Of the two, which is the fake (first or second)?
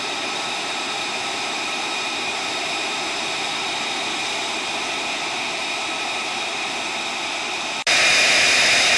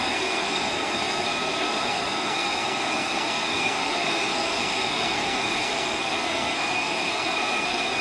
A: second